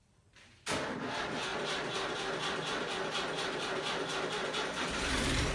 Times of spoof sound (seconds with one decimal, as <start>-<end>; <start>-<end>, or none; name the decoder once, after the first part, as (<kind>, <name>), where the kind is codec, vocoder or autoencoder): none